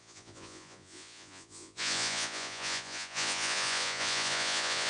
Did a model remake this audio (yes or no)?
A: yes